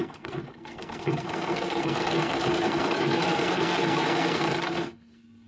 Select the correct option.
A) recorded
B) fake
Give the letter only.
B